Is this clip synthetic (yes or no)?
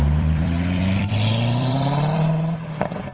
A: yes